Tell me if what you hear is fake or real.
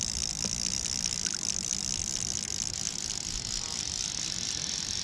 real